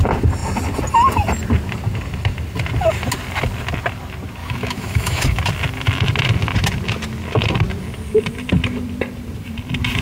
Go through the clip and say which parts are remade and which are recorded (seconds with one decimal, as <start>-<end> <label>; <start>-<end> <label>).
0.0-4.4 recorded; 4.4-5.4 remade; 5.4-10.0 recorded